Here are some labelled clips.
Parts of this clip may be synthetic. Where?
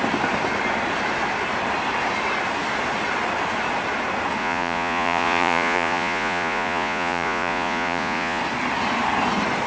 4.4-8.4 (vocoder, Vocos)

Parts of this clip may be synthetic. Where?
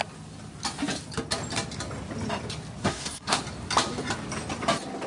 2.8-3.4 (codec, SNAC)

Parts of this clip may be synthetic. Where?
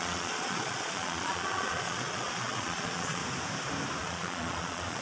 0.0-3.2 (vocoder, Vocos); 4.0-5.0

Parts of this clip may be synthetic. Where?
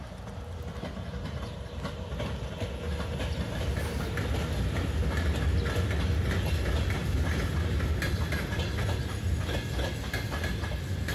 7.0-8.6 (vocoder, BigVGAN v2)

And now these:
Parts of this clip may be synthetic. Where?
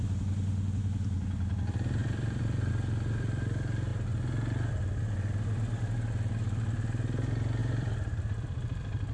2.0-2.7 (vocoder, BigVGAN v2); 7.6-9.1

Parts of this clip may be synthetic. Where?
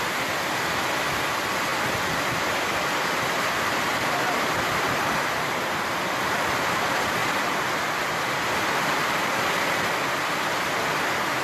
1.7-6.6 (vocoder, BigVGAN v2); 7.2-9.5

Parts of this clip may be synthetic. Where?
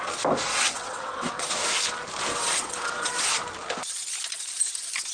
0.5-1.5 (vocoder, WaveNeXt); 2.3-3.3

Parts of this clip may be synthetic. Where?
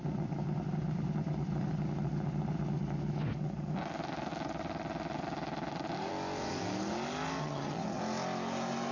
7.4-8.0 (vocoder, HiFi-GAN)